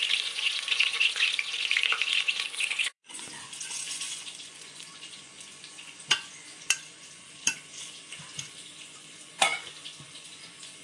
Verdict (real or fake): fake